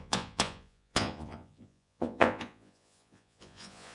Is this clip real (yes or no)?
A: no